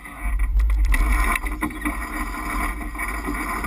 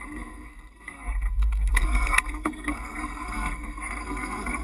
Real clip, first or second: first